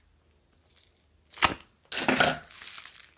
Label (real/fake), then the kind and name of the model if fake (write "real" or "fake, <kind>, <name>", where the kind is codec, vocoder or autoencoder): real